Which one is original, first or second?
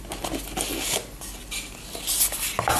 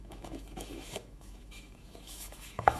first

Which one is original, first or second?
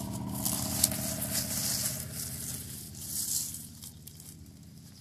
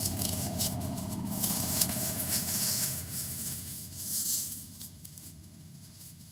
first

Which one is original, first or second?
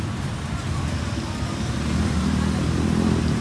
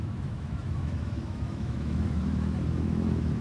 first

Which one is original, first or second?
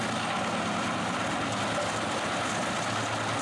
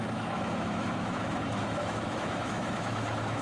first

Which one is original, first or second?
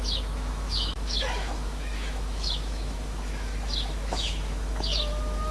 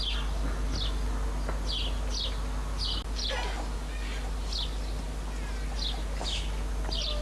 second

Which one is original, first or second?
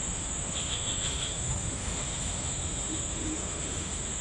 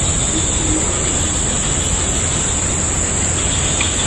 second